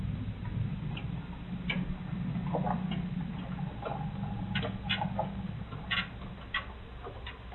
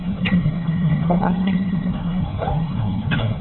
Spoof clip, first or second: second